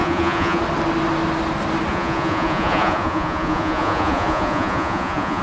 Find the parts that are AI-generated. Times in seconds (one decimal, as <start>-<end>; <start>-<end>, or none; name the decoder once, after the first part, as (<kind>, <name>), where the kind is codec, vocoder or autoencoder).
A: 0.0-0.6 (vocoder, Vocos); 1.9-5.4